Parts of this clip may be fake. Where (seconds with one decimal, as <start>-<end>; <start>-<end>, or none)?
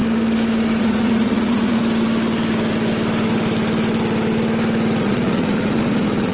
0.8-1.8; 5.0-6.3